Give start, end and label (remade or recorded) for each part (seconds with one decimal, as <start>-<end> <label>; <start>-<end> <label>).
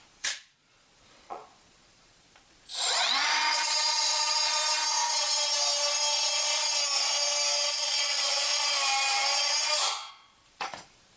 0.0-4.6 remade; 4.6-7.7 recorded; 7.7-8.5 remade; 8.5-10.1 recorded; 10.1-11.2 remade